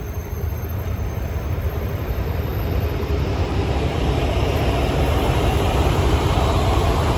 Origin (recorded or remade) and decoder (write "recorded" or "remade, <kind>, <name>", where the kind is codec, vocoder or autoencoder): remade, vocoder, BigVGAN v2